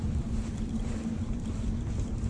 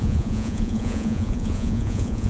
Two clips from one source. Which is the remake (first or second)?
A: second